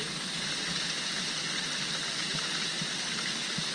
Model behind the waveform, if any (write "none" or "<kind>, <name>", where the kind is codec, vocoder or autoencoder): none